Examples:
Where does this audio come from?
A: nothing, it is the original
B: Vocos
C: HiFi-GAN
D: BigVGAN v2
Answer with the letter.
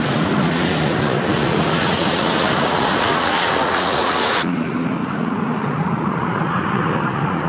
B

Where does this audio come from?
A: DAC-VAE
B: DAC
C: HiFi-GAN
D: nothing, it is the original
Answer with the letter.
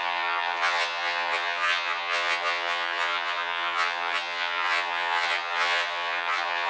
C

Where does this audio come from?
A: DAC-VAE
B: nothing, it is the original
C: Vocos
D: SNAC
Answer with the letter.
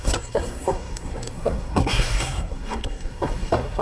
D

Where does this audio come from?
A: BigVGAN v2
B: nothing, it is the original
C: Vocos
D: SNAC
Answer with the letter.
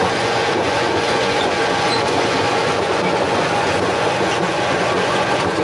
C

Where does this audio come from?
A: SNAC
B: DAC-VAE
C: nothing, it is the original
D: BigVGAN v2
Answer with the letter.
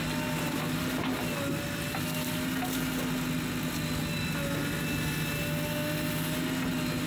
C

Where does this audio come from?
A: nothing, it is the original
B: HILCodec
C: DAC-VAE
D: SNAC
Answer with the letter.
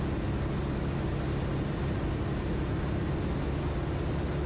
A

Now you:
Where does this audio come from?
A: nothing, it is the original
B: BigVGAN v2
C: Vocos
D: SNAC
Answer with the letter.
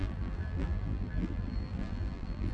B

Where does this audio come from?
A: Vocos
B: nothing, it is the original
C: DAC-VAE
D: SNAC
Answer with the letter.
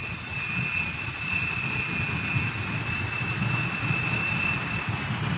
B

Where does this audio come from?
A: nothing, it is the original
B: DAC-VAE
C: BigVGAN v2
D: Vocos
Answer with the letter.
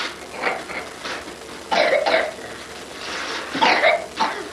A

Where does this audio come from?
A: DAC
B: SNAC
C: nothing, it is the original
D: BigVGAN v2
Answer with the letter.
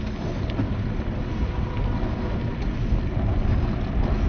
C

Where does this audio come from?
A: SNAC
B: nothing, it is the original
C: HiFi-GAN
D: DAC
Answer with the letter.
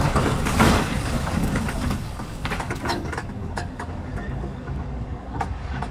D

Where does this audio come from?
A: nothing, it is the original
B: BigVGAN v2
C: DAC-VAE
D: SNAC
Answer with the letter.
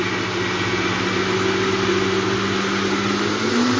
A